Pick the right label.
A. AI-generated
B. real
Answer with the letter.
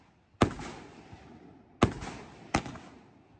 B